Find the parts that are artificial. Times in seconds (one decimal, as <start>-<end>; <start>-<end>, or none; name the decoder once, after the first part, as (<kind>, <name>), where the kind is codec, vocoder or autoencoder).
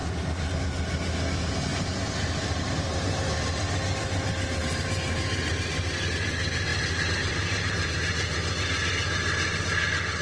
1.7-4.6 (vocoder, BigVGAN v2); 6.7-7.9